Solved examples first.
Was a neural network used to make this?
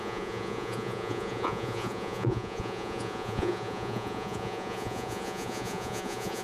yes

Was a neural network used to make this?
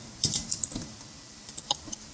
no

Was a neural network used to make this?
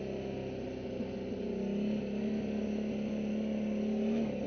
no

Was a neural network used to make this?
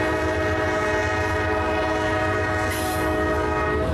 no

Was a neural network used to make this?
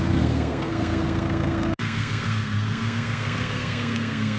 yes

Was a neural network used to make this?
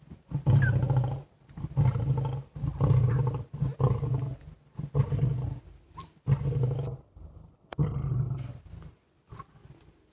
no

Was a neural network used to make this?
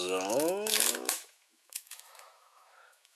yes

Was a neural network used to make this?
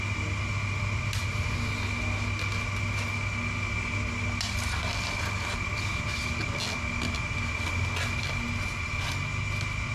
no